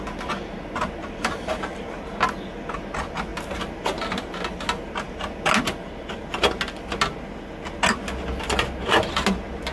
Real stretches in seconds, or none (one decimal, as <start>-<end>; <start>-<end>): 0.0-1.0; 1.8-9.7